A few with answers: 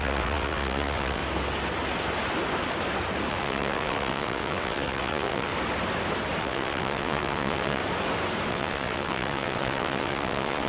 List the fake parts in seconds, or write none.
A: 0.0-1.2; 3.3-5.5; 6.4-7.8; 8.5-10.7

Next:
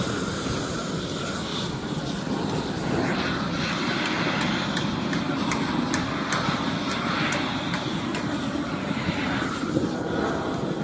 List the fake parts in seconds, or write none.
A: none

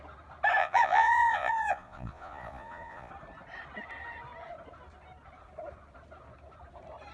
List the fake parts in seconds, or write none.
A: 0.6-3.1

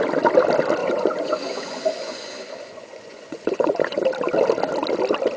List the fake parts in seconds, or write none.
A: 0.8-4.0

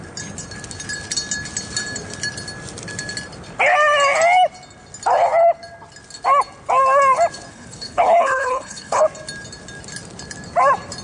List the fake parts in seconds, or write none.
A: 7.5-9.0

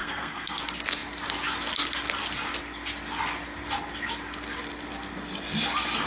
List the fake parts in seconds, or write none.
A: 0.0-0.6

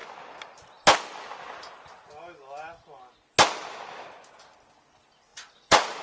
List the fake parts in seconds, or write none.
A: 5.3-6.0